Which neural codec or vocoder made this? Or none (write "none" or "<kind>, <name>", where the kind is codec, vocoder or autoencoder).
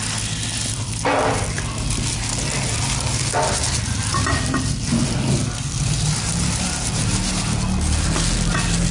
none